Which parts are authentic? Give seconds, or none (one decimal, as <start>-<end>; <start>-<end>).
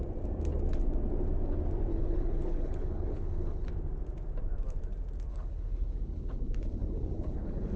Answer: 0.0-1.9; 3.7-5.3